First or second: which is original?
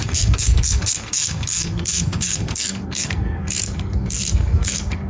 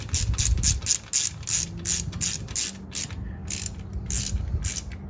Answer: second